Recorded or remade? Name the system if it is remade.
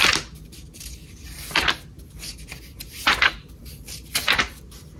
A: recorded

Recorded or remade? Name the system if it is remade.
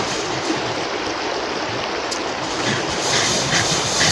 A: remade, vocoder, BigVGAN v2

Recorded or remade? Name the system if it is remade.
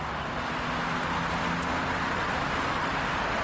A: recorded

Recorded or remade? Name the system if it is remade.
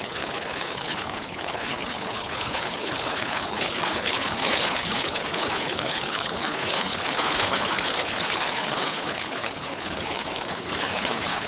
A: remade, codec, HILCodec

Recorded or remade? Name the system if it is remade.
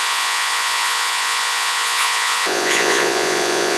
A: remade, vocoder, Vocos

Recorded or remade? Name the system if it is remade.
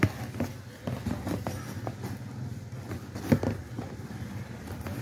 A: recorded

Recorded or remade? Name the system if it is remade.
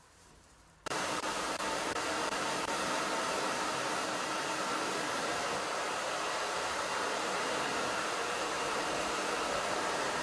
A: remade, vocoder, BigVGAN v2